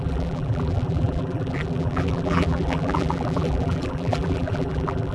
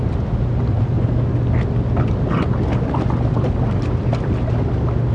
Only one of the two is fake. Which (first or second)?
first